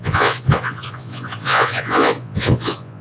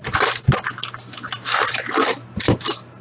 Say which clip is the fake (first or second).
first